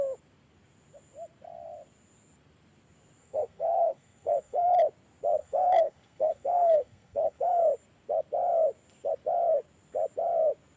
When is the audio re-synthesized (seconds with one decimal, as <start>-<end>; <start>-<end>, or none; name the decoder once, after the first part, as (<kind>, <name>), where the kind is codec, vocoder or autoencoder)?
3.2-4.7 (codec, SNAC); 5.4-7.6